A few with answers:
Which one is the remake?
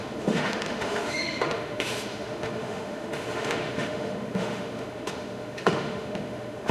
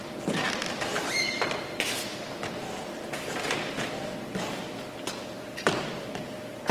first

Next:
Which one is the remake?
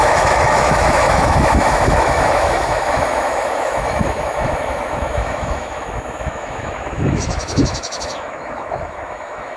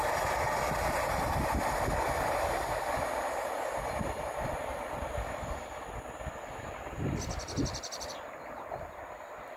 first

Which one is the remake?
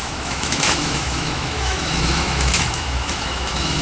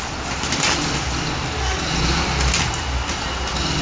first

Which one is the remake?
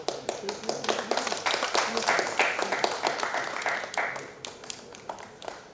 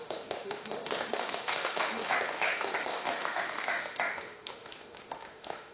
second